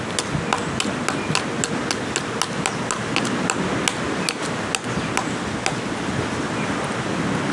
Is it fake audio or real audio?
real